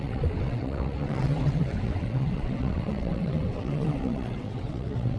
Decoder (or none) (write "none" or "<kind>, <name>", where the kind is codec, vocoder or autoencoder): vocoder, WaveNeXt